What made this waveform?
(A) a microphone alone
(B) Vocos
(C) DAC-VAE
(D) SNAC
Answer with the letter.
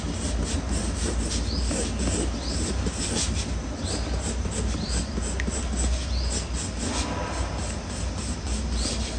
A